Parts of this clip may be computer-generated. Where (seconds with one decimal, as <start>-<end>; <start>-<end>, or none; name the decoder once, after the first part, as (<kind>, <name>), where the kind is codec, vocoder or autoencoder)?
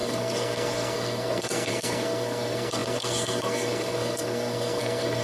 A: 0.0-5.2 (codec, SNAC)